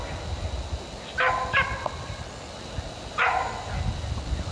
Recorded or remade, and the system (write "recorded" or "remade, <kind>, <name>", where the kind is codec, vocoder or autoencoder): recorded